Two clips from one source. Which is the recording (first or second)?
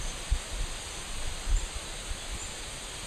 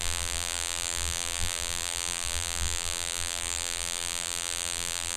first